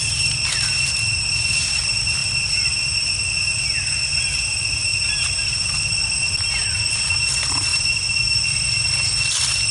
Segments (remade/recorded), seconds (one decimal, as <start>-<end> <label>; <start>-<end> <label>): 0.0-7.7 recorded; 7.7-8.7 remade; 8.7-9.7 recorded